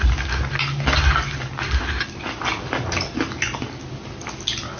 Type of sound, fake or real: real